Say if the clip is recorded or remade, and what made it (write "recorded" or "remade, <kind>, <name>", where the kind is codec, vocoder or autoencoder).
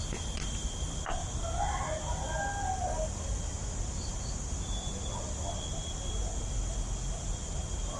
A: recorded